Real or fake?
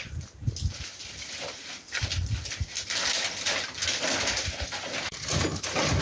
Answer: real